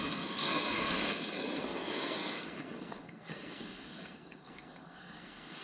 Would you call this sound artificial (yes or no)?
yes